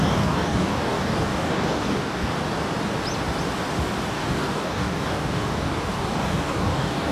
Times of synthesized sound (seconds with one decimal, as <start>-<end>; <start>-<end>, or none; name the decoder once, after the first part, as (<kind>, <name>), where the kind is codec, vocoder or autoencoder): 0.0-2.3 (codec, DAC); 4.1-7.1